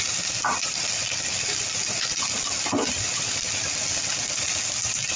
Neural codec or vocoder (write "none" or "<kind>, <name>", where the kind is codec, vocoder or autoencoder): none